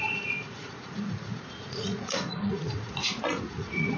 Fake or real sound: fake